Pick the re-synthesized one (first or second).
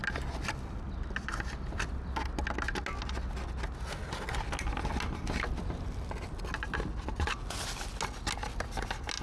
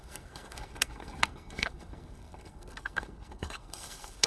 second